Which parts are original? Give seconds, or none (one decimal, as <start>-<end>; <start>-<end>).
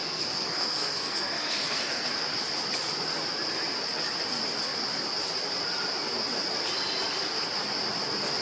2.1-8.4